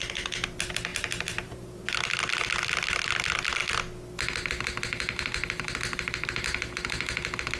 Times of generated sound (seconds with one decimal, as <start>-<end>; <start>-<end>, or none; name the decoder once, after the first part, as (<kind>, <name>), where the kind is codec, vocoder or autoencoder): 0.9-2.0 (vocoder, BigVGAN v2)